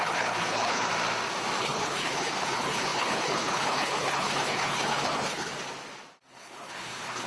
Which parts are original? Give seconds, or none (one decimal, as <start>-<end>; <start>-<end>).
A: 0.9-1.6; 5.5-6.3